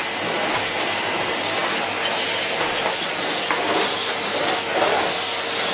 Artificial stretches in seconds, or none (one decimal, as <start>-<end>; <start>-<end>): none